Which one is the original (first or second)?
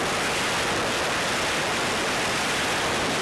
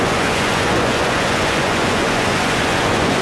first